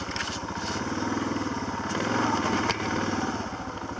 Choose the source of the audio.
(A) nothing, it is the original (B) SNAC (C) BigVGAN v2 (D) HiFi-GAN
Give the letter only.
A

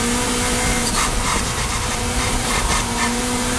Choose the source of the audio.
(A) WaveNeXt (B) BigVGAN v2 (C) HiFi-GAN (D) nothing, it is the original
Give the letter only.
B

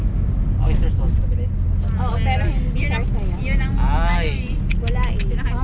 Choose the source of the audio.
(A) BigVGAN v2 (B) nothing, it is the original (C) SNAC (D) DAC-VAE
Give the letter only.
B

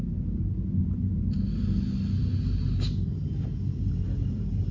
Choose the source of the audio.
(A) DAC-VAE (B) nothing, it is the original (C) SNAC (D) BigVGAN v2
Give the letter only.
B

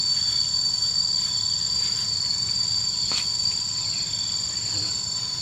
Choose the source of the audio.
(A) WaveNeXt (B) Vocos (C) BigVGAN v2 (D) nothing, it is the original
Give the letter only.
C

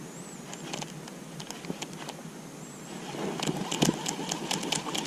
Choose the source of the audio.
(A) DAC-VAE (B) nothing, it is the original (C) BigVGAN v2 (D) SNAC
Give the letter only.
B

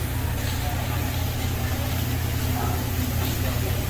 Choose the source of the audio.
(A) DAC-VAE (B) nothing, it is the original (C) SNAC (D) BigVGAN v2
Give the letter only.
B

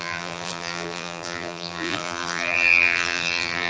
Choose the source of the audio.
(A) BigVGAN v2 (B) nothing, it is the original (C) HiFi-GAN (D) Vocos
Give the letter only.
A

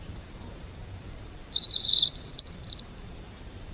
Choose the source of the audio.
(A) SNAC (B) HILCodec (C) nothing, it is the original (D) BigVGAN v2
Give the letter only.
D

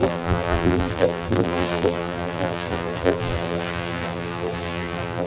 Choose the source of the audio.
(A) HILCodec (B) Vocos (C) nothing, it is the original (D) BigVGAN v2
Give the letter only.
D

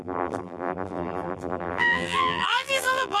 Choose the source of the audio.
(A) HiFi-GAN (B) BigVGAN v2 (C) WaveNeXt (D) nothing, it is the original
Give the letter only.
B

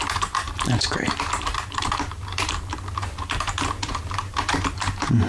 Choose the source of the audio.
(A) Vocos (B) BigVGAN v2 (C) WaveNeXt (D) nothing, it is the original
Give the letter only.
B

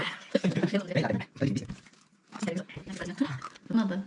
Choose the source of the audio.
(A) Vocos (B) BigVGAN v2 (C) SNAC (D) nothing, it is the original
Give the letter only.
D